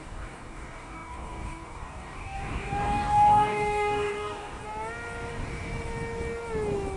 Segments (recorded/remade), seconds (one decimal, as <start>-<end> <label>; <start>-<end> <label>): 0.0-4.6 remade; 4.6-5.3 recorded; 5.3-5.7 remade; 5.7-7.0 recorded